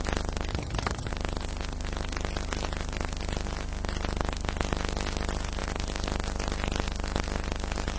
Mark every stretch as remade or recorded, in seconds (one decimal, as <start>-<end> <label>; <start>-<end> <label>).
0.0-0.5 recorded; 0.5-1.1 remade; 1.1-8.0 recorded